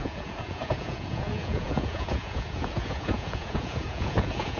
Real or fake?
fake